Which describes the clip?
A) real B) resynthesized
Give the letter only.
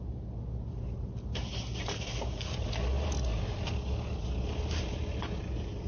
A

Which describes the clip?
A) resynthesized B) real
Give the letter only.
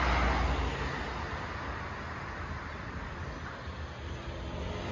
B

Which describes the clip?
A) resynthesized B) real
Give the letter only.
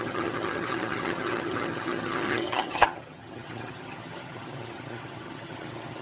A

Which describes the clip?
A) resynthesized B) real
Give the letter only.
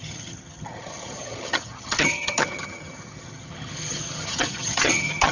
A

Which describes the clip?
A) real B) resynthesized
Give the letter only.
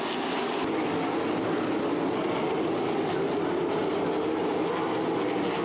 A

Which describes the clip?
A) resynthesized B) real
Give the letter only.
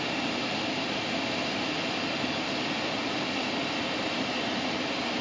B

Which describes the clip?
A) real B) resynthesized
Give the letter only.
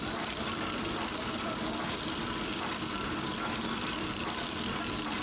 A